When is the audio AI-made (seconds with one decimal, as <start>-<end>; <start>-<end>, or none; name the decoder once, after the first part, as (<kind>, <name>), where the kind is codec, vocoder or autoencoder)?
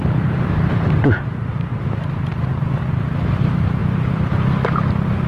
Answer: 0.0-1.7 (vocoder, BigVGAN v2); 3.4-3.8